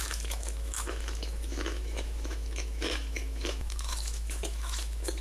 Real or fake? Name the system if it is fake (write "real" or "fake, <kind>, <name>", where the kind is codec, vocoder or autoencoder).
fake, autoencoder, DAC-VAE